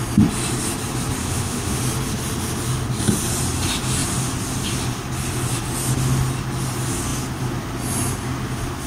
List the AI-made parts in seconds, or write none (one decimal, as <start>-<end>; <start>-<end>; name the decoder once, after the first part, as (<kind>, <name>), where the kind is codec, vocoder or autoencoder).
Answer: 1.2-1.8 (autoencoder, DAC-VAE)